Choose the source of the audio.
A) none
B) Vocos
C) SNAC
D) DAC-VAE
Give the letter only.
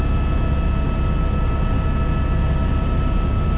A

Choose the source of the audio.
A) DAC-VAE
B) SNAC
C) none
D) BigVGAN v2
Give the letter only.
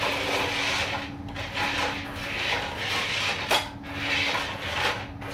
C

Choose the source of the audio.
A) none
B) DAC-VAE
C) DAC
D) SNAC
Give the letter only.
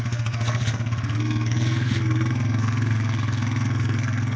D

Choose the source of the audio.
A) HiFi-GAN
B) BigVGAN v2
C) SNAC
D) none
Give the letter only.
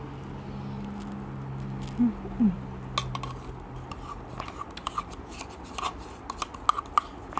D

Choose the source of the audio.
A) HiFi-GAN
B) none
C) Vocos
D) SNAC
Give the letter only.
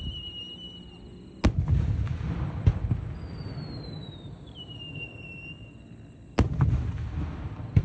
B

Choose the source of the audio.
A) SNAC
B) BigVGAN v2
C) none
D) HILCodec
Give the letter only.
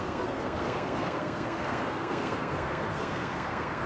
A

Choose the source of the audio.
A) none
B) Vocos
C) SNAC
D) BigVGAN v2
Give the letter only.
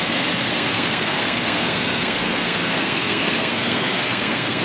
C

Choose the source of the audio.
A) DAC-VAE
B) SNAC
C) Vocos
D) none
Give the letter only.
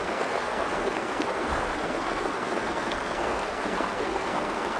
B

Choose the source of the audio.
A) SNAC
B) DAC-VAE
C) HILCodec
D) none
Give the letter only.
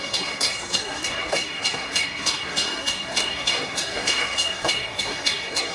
A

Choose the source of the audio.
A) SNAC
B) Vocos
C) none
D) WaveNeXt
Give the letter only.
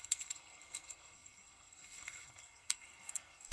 A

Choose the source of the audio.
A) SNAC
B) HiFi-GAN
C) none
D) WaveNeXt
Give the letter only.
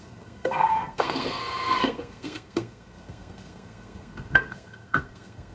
A